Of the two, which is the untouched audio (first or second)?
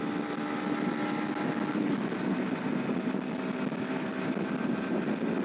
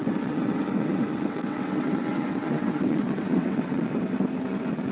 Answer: first